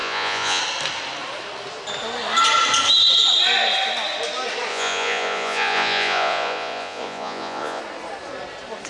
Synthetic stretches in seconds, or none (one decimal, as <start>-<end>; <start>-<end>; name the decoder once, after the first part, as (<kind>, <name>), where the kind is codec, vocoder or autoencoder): 0.0-0.6 (vocoder, Vocos); 4.7-7.8